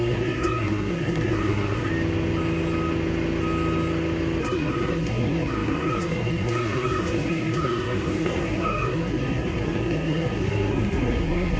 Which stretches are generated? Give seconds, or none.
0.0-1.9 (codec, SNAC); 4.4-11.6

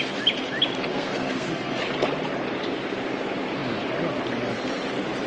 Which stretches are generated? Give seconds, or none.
0.9-1.8 (codec, SNAC)

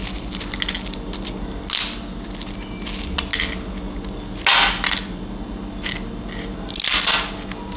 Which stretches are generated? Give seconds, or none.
none

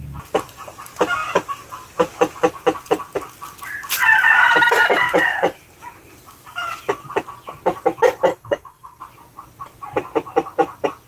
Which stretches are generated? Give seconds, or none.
8.3-9.0 (codec, SNAC)

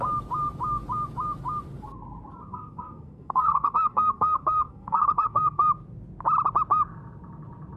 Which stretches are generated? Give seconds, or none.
2.5-5.6 (codec, SNAC)